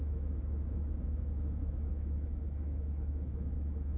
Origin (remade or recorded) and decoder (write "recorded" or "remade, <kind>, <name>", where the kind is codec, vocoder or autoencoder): remade, autoencoder, DAC-VAE